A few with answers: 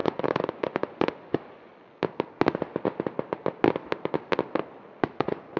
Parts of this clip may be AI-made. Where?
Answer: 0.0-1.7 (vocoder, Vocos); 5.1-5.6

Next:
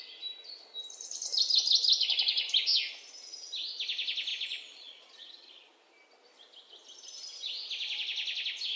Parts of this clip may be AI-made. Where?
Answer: 4.3-5.7 (vocoder, Vocos)

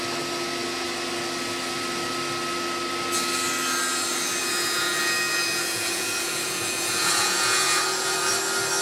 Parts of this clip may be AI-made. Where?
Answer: 4.4-8.3 (vocoder, Vocos)

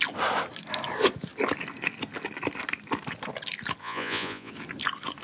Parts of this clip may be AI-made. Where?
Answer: 3.8-4.5 (vocoder, Vocos)

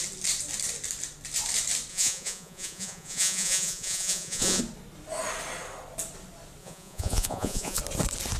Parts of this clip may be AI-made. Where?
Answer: 1.9-4.6 (vocoder, Vocos); 6.6-7.8